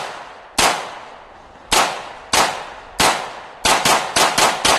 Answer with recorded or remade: recorded